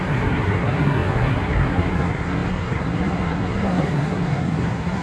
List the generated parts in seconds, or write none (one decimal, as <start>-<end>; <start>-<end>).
0.0-5.0